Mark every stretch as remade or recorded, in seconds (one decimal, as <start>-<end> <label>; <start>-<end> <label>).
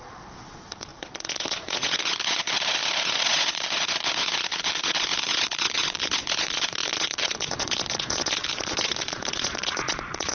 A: 0.0-10.3 remade